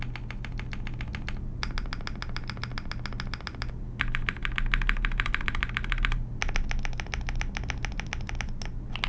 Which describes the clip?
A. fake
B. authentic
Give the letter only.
B